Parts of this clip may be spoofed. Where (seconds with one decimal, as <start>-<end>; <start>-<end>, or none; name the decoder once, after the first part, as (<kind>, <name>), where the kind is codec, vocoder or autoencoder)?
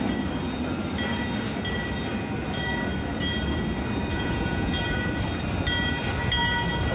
4.1-4.7 (vocoder, Vocos)